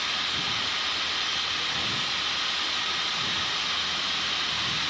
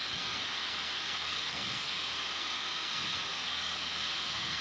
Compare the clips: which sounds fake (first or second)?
second